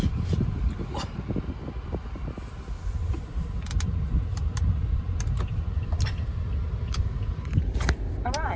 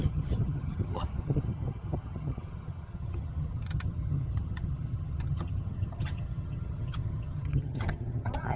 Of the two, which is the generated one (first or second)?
second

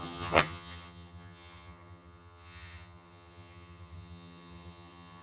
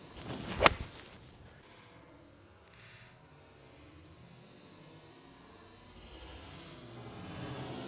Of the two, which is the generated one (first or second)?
first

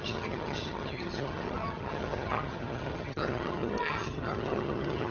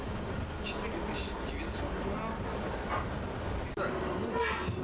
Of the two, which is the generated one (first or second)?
first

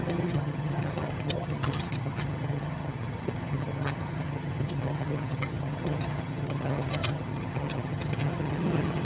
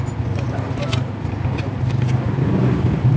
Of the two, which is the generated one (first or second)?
first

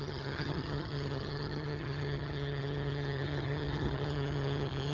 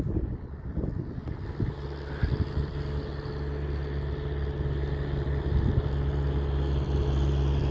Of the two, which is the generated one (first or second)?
first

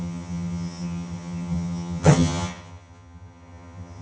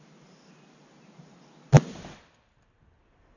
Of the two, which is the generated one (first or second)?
first